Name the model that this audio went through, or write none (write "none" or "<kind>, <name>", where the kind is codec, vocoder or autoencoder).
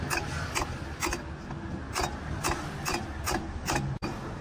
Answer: none